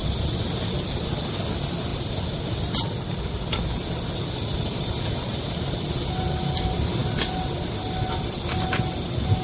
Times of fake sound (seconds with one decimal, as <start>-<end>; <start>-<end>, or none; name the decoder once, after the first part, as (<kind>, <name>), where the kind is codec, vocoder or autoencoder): none